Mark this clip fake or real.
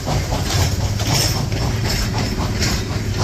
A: real